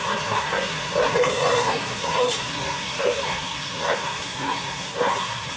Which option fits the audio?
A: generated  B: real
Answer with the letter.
A